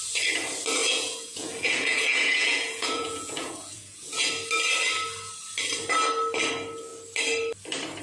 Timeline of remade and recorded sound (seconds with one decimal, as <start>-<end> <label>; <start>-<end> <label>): 0.0-0.8 recorded; 0.8-4.3 remade; 4.3-8.0 recorded